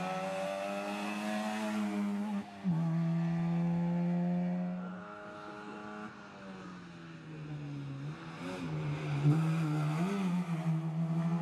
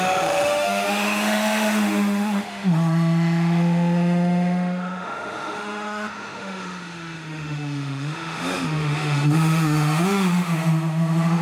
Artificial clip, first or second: second